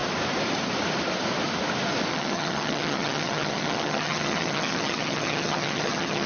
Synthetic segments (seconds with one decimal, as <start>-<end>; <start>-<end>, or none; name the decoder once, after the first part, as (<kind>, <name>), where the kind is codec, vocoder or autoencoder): 2.1-6.3 (vocoder, HiFi-GAN)